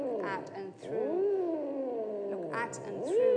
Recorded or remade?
recorded